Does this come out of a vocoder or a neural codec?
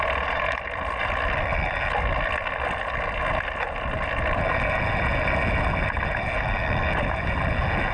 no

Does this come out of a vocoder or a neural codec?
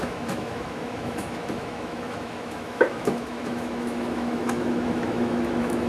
yes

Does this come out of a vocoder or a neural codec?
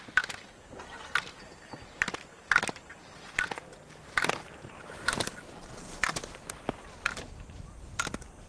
no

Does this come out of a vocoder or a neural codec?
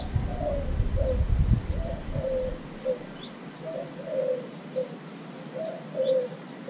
no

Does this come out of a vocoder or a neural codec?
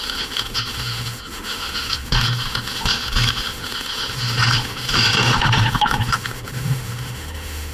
yes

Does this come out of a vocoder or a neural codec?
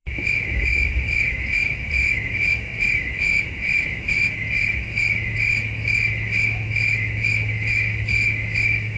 yes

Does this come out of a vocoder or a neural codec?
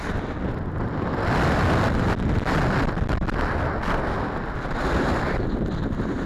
no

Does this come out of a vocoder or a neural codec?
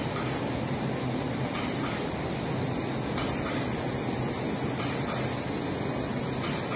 no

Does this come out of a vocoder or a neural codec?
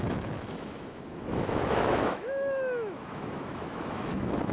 yes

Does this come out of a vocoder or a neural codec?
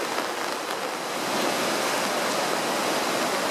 no